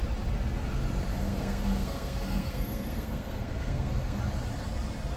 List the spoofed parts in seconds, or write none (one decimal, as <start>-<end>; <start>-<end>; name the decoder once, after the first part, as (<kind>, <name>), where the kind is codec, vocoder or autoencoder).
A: 1.1-4.2 (codec, SNAC)